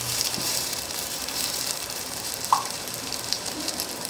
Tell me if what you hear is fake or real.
fake